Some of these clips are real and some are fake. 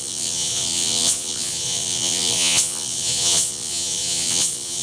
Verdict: fake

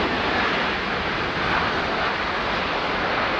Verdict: real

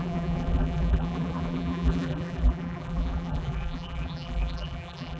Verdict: fake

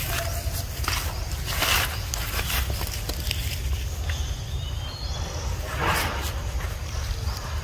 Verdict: real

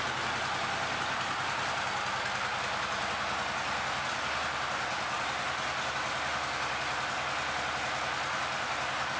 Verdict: real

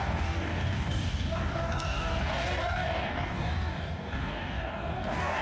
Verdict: fake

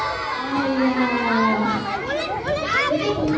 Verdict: real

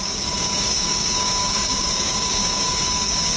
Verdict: fake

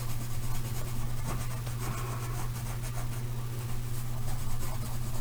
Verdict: real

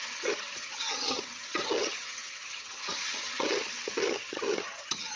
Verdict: fake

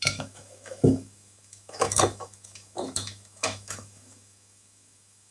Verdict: fake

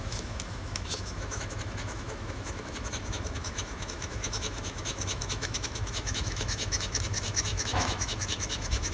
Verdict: fake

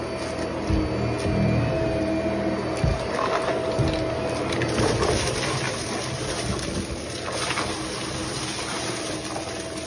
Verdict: real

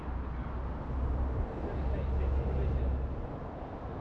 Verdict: real